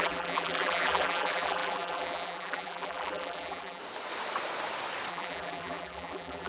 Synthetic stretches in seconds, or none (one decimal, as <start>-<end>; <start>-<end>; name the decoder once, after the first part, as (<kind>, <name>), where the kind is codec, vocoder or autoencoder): 0.0-3.8 (vocoder, BigVGAN v2); 5.1-6.5